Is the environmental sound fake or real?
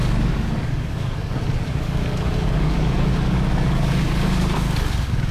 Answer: fake